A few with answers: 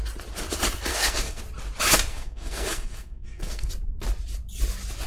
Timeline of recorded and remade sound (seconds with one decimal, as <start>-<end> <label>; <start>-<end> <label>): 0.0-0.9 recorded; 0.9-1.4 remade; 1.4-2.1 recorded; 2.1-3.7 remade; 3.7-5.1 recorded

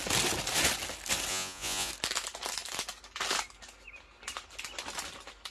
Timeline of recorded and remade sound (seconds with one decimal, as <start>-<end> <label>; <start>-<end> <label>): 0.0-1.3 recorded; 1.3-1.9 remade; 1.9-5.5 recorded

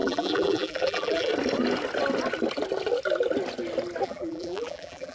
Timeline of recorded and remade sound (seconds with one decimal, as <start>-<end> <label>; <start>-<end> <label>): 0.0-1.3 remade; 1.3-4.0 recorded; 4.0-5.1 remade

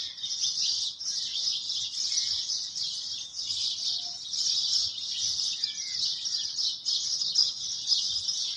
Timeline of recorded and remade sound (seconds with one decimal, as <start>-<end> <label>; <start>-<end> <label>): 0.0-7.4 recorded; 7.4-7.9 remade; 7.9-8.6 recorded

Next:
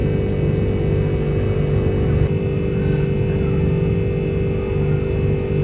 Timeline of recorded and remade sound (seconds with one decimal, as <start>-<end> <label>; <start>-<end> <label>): 0.0-5.6 recorded

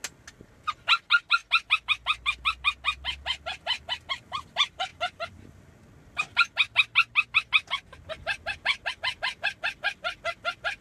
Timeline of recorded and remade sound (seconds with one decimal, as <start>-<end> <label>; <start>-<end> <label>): 0.0-10.8 recorded

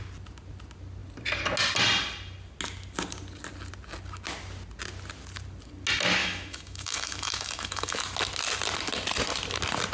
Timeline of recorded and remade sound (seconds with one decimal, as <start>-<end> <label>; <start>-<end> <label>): 0.0-6.2 recorded; 6.2-8.0 remade; 8.0-9.9 recorded